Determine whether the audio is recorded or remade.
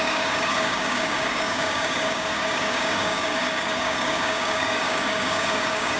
remade